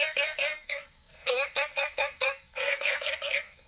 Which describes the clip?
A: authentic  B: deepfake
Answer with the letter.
B